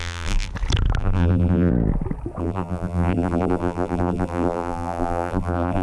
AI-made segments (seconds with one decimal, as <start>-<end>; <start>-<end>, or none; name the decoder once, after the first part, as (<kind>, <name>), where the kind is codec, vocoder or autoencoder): 0.0-0.5 (vocoder, BigVGAN v2); 1.0-1.7; 2.4-5.8